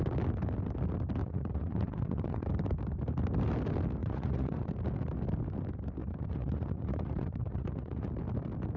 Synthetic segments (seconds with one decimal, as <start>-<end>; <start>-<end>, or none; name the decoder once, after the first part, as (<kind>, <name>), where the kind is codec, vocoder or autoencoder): 1.2-2.5 (vocoder, Vocos); 4.0-4.7; 6.0-8.1